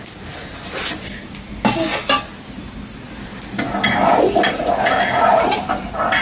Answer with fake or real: real